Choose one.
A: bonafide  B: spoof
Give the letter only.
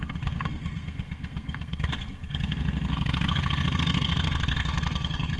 B